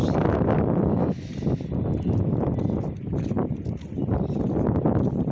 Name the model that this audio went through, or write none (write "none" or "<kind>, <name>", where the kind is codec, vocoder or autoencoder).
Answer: none